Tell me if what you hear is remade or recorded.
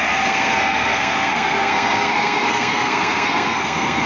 remade